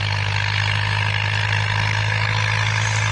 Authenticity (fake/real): real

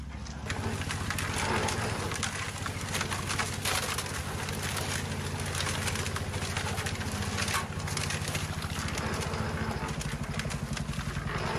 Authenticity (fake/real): real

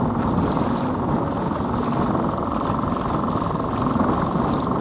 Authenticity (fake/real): real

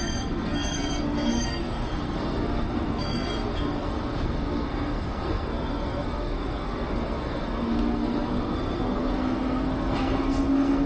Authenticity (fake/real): fake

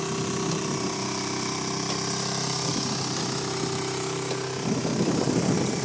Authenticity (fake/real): real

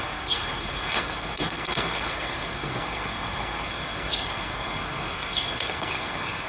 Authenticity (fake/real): fake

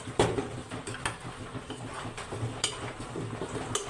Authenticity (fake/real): real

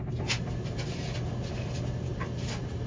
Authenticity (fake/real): real